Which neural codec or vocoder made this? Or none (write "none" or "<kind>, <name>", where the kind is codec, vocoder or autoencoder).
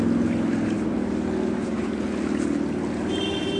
none